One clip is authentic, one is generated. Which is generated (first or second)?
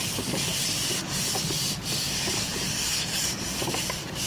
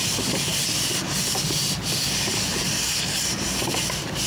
first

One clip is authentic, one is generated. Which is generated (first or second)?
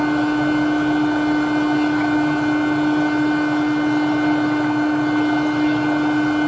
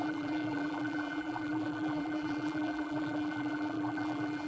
second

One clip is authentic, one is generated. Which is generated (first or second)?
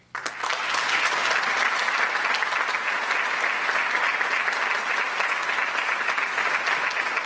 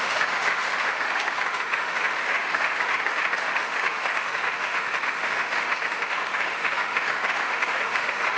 second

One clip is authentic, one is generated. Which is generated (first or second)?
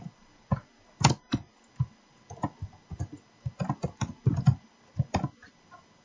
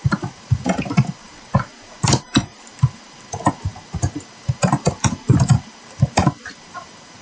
second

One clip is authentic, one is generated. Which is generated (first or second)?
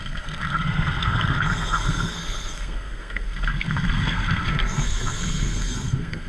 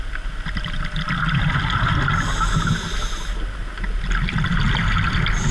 first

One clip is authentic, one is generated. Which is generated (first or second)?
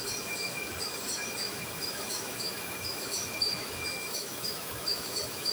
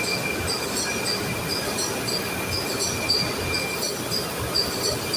first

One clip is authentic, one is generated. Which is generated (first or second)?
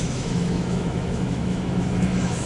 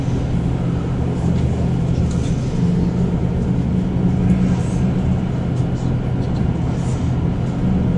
first